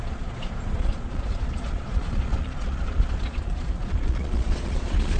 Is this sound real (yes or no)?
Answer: no